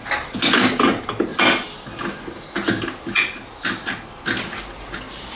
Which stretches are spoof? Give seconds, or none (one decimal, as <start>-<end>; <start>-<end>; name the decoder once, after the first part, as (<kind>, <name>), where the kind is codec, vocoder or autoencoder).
none

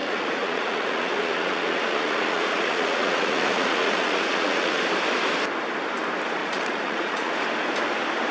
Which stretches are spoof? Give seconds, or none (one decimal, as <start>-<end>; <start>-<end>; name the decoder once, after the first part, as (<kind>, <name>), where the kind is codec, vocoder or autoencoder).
0.0-4.8 (vocoder, Vocos); 6.4-7.3

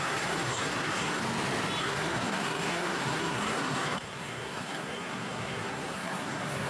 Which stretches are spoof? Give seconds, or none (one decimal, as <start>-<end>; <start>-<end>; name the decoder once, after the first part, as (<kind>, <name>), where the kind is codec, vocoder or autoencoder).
0.0-1.2 (codec, SNAC); 1.8-6.7

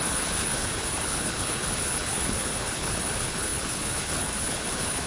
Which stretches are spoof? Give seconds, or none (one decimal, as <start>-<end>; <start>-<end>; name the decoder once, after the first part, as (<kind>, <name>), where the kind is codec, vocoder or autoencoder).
0.0-5.1 (codec, HILCodec)

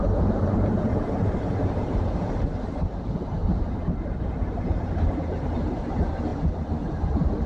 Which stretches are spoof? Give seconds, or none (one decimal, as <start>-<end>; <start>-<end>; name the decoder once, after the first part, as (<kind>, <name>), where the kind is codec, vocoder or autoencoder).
0.0-7.5 (vocoder, BigVGAN v2)